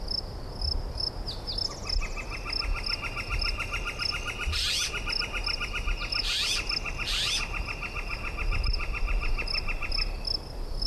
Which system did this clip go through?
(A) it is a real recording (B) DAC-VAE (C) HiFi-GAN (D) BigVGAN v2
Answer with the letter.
A